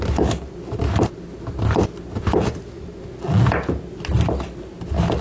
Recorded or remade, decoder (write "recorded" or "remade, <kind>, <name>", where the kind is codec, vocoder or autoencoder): recorded